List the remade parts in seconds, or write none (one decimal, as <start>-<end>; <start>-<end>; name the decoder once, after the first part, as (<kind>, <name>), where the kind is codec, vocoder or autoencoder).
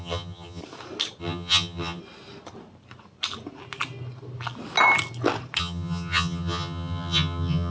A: 0.0-0.6 (vocoder, HiFi-GAN); 1.2-2.0; 5.6-7.7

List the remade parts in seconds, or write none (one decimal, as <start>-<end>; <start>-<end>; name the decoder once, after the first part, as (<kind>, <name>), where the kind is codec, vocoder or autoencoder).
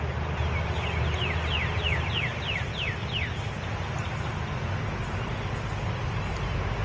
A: none